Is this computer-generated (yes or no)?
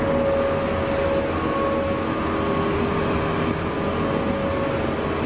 no